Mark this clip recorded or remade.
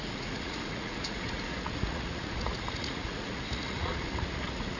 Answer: remade